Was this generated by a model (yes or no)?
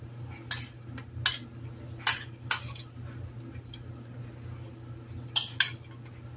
no